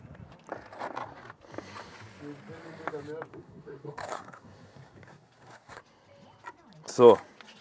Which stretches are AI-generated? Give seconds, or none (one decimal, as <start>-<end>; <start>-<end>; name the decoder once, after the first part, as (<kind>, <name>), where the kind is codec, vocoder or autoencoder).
3.3-5.8 (codec, SNAC)